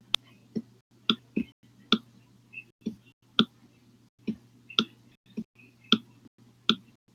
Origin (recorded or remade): recorded